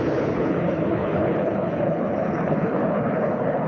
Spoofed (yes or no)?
yes